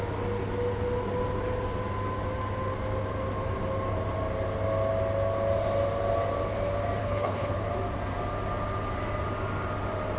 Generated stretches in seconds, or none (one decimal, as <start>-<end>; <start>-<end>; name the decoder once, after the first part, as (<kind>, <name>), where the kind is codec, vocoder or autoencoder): 7.0-7.7 (codec, HILCodec)